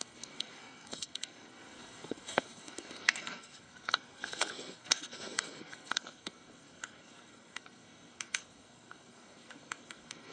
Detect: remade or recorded remade